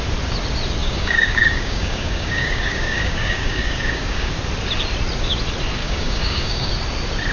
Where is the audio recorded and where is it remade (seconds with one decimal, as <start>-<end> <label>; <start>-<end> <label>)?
0.0-0.8 recorded; 0.8-4.3 remade; 4.3-5.8 recorded; 5.8-6.7 remade; 6.7-7.3 recorded